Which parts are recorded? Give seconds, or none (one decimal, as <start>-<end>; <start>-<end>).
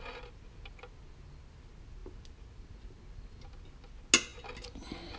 0.0-5.2